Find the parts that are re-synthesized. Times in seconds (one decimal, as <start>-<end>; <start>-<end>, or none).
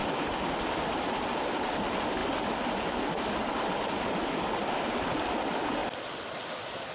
none